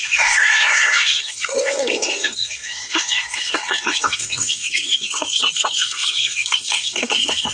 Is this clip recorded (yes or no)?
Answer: no